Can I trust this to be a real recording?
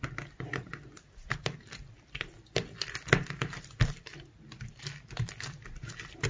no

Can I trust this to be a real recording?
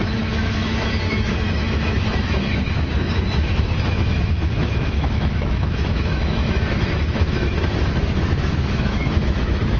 no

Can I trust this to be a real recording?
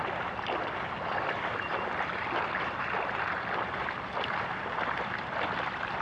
yes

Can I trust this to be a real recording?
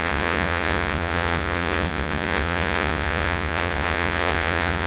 no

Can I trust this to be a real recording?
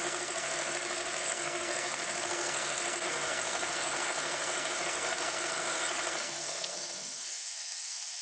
no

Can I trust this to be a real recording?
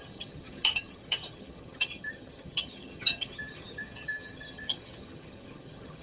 no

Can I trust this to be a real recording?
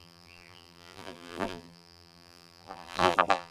no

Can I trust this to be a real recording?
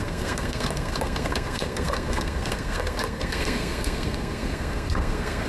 no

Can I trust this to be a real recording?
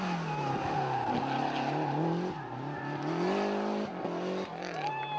yes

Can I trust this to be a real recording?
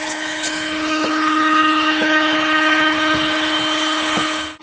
no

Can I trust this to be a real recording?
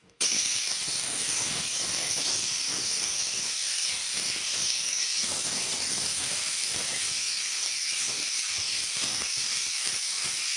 no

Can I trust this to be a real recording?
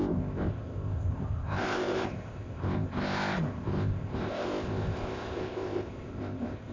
no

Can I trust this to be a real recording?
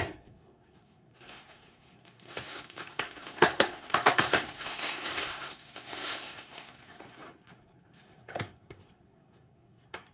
no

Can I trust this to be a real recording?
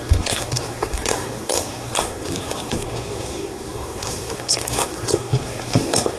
no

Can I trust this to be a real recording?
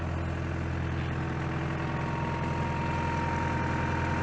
yes